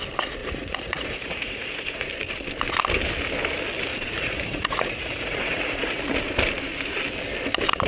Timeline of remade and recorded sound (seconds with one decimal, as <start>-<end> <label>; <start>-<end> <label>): 0.0-0.4 recorded; 0.4-2.1 remade; 2.1-3.9 recorded; 3.9-6.0 remade; 6.0-7.9 recorded